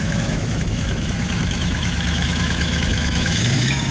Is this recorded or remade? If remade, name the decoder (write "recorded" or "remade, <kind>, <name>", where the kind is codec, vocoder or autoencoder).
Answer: remade, autoencoder, DAC-VAE